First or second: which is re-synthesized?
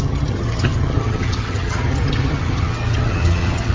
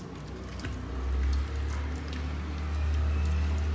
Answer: first